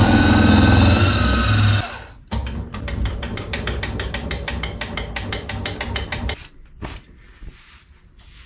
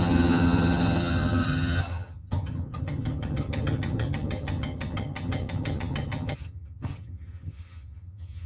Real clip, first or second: first